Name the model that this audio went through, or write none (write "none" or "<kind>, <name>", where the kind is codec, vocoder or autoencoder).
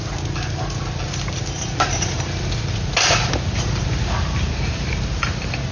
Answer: none